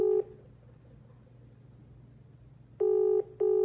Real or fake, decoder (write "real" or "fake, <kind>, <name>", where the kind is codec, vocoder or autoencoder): real